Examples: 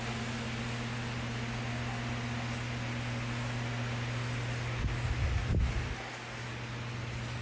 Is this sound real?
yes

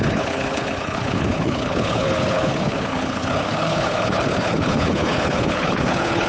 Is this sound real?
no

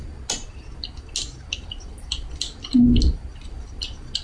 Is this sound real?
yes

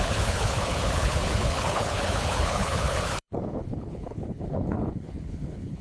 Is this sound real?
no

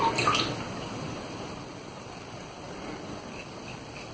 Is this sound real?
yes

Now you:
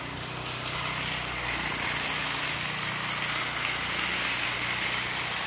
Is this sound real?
yes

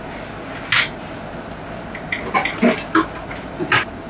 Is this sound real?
yes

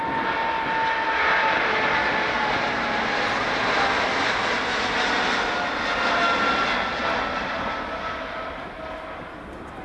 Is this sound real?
yes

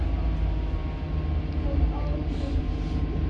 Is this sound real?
yes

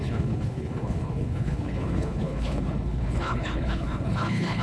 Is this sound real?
no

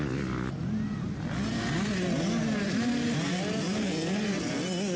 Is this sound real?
yes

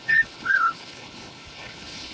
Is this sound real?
no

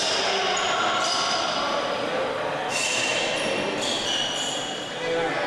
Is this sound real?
yes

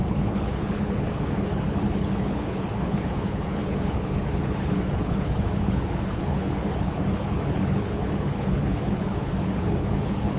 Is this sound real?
no